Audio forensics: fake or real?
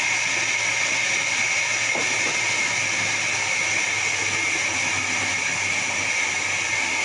real